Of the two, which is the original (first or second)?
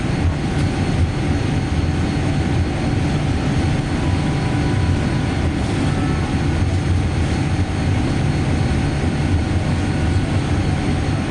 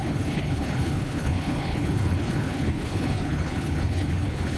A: first